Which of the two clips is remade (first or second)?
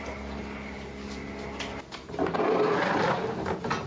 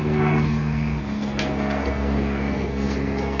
second